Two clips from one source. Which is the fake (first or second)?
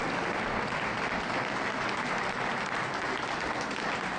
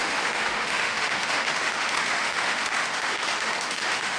second